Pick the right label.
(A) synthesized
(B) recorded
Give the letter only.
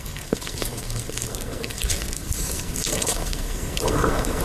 A